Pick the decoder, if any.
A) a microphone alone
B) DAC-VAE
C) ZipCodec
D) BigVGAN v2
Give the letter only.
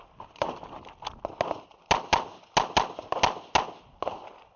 A